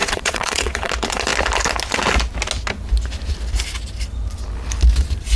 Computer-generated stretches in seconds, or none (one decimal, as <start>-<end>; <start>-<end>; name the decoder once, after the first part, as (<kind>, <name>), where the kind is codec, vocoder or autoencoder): 0.0-0.9 (vocoder, WaveNeXt)